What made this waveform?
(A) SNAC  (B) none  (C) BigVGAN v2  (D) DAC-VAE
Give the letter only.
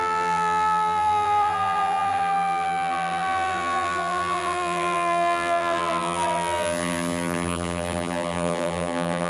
C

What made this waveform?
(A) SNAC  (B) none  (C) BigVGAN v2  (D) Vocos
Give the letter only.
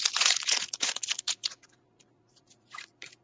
D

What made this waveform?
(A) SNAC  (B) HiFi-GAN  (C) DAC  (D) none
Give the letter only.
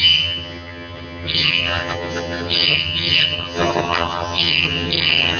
B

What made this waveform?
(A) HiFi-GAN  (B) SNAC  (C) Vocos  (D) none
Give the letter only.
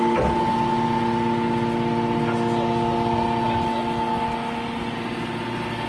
D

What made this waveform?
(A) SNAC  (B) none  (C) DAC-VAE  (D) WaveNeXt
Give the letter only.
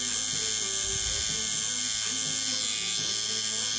B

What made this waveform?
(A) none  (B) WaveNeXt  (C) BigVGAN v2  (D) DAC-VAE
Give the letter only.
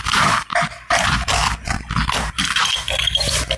C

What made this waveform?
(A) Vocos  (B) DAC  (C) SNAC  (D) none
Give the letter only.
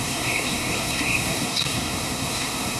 C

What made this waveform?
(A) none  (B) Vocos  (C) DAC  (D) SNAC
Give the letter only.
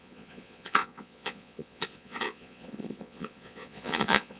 B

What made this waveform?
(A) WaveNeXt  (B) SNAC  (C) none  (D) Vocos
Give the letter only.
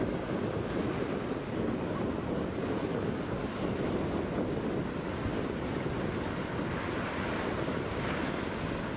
C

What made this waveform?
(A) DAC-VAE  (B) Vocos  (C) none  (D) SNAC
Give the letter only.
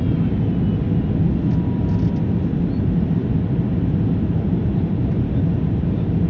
C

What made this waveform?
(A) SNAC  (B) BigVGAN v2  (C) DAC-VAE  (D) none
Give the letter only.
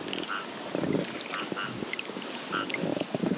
D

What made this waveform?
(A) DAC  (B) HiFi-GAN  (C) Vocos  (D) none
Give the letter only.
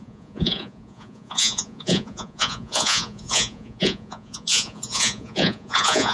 C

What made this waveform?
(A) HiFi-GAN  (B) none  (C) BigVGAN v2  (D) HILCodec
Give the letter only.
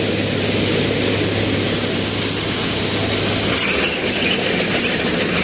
B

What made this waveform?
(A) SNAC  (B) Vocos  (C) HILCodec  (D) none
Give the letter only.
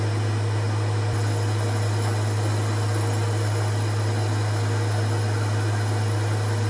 D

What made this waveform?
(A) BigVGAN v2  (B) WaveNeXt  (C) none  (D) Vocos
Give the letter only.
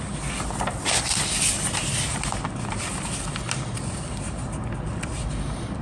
C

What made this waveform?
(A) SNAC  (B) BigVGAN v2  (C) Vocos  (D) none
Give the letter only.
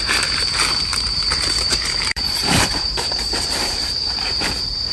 B